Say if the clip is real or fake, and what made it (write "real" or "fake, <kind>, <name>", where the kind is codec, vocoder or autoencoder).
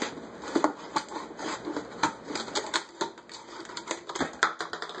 real